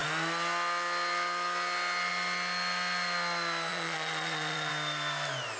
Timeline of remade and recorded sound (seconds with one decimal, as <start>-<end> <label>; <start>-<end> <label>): 0.0-3.7 recorded; 3.7-4.7 remade; 4.7-5.6 recorded